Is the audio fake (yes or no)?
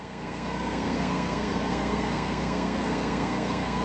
yes